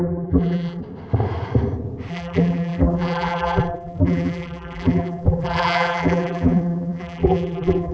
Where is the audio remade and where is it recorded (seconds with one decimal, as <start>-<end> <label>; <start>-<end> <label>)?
0.0-0.8 remade; 0.8-2.1 recorded; 2.1-7.9 remade